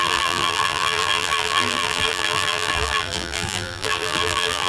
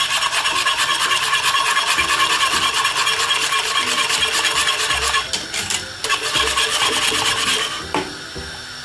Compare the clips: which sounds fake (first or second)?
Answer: first